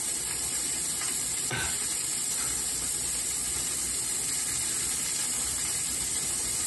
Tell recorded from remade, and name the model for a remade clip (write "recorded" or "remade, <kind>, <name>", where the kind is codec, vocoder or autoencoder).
remade, vocoder, BigVGAN v2